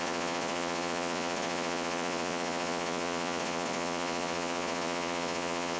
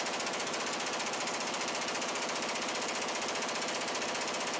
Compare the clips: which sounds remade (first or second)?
first